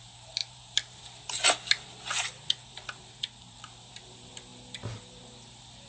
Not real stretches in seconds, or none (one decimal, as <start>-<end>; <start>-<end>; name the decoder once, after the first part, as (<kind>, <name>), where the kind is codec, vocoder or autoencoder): 0.0-4.5 (vocoder, BigVGAN v2); 5.1-5.9